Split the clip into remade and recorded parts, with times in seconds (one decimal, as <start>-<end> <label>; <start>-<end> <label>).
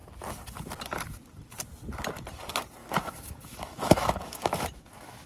0.0-2.8 recorded; 2.8-5.3 remade